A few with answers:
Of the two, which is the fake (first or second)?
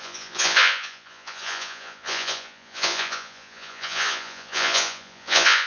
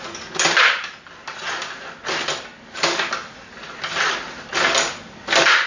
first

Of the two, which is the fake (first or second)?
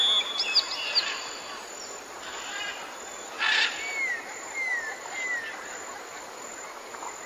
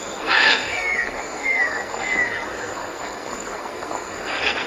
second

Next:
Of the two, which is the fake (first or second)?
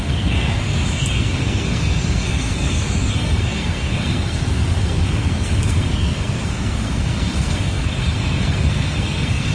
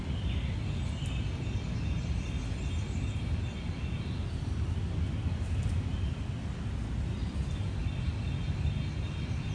first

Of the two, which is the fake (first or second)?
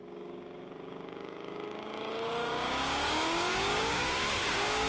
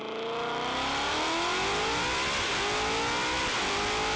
first